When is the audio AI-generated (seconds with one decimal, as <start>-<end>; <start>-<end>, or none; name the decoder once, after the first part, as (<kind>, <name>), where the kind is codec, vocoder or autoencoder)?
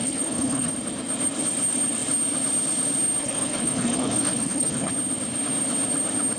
0.0-0.7 (codec, HILCodec); 3.2-4.9